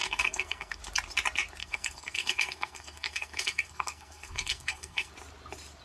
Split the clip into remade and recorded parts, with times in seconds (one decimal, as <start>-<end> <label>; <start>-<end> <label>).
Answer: 0.0-0.8 remade; 0.8-1.6 recorded; 1.6-5.1 remade; 5.1-5.8 recorded